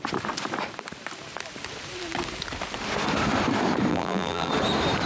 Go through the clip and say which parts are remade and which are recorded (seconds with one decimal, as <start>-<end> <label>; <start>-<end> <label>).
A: 0.0-3.9 recorded; 3.9-4.5 remade; 4.5-5.1 recorded